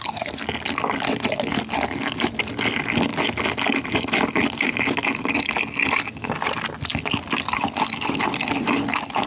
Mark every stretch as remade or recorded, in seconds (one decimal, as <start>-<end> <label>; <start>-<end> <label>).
0.0-9.3 recorded